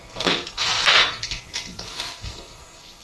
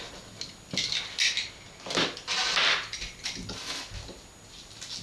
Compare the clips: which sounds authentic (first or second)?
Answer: second